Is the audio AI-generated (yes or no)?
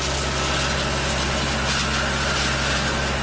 no